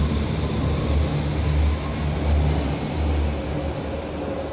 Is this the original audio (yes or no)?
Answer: yes